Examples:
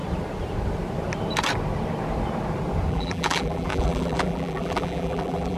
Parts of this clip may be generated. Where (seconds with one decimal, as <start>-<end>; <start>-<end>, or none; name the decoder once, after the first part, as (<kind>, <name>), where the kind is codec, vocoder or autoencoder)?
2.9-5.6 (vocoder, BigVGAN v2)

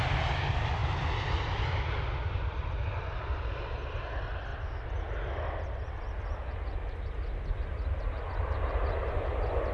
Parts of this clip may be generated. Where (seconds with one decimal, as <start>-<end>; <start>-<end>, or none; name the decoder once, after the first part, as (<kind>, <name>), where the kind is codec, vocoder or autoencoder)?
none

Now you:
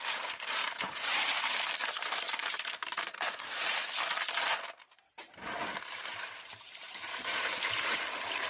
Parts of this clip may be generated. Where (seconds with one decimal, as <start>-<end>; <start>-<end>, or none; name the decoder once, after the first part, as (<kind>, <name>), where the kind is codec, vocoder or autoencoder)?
0.0-3.8 (vocoder, BigVGAN v2); 5.1-5.6; 6.1-8.5

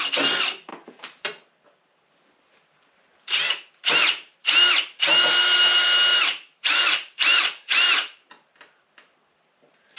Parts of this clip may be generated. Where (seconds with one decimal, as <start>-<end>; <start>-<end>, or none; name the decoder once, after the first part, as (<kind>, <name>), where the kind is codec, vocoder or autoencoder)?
6.1-8.3 (vocoder, BigVGAN v2)

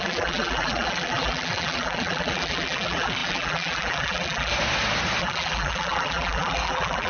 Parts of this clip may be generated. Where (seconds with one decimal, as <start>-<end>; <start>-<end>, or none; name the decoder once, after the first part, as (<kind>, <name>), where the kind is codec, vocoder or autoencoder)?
0.0-4.5 (vocoder, BigVGAN v2); 5.2-7.1